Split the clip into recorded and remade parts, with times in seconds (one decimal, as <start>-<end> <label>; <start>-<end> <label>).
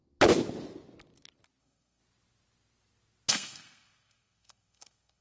0.0-1.6 recorded; 1.6-2.0 remade; 2.0-3.3 recorded; 3.3-5.2 remade